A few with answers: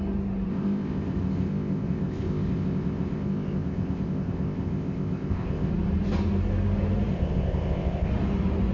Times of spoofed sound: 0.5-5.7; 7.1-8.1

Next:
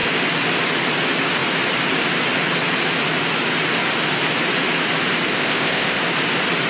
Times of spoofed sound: 5.3-6.0

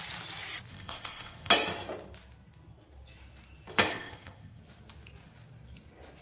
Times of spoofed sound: 0.7-1.5; 3.9-4.6

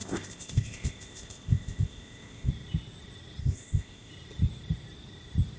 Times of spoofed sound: 0.0-2.5; 3.4-4.1